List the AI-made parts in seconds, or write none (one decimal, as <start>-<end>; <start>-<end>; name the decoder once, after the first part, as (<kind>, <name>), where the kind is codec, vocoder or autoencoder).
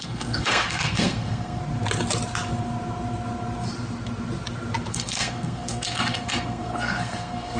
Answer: 0.0-1.6 (codec, SNAC); 4.9-7.6